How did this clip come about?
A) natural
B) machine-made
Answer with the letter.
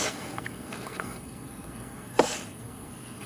B